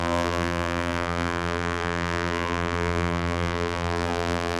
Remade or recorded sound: remade